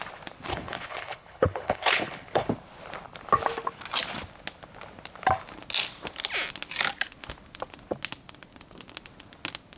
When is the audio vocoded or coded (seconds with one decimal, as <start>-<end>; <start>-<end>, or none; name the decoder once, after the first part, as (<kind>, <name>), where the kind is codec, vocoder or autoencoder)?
0.5-2.5 (codec, HILCodec)